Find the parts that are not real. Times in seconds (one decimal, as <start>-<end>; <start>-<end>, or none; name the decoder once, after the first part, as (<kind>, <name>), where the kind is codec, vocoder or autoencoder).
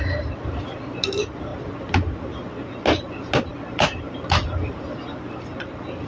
none